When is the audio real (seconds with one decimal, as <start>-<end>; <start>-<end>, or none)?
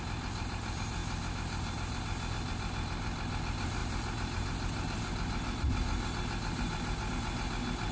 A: 0.0-7.9